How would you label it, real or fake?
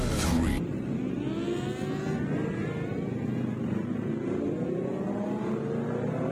real